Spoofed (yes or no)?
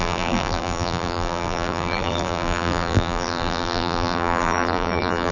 yes